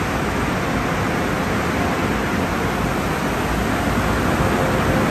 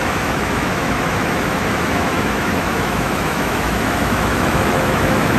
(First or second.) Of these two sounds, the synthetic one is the second